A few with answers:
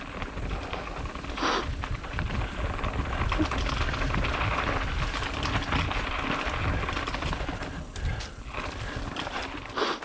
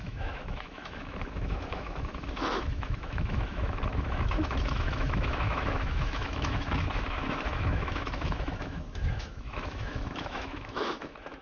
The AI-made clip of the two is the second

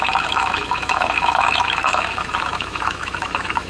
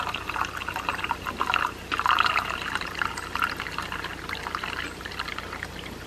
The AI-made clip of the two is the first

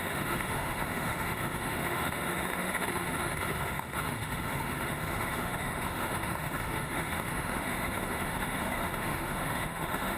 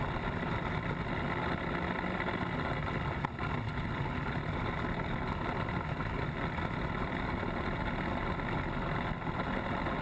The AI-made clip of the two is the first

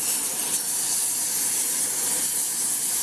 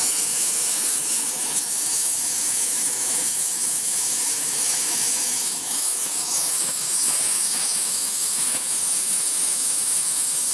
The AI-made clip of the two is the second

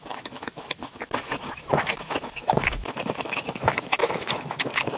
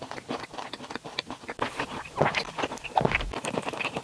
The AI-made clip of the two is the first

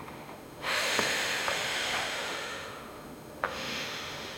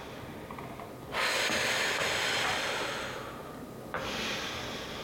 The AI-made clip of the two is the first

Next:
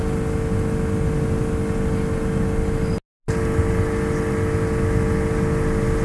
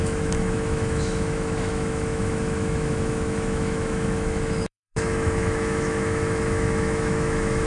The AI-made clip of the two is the second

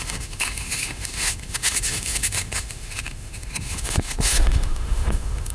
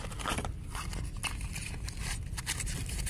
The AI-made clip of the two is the first